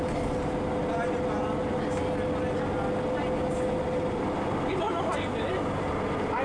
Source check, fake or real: real